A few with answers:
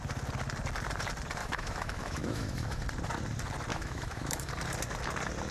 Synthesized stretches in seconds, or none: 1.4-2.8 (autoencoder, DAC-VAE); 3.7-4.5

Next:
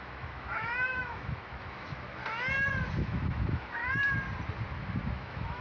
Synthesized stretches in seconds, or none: 0.0-2.2 (autoencoder, DAC-VAE); 2.9-3.8; 5.1-5.6

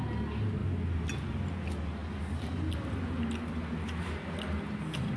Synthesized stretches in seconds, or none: none

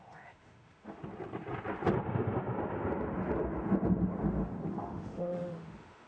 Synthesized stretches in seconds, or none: 0.0-1.0 (autoencoder, DAC-VAE); 4.7-6.1

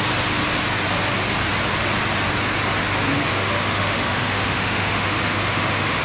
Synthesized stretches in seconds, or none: 3.3-6.0 (autoencoder, DAC-VAE)